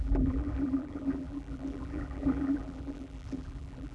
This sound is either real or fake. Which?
fake